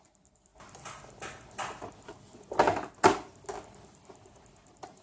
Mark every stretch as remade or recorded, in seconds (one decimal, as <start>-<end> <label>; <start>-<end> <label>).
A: 0.0-5.0 recorded